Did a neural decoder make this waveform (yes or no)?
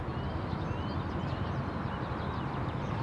no